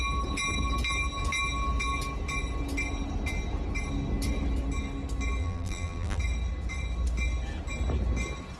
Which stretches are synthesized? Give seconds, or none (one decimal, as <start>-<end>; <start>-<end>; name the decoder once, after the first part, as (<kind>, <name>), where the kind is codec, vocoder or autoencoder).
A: 5.4-6.2 (vocoder, BigVGAN v2)